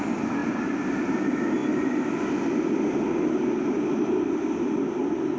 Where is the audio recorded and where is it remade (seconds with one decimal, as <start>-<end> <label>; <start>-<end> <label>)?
0.0-5.4 recorded